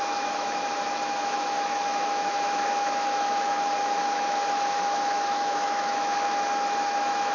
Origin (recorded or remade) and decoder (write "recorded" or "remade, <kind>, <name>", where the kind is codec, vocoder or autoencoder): remade, autoencoder, DAC-VAE